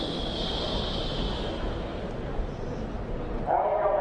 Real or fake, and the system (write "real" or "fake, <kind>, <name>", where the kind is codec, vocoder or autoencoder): real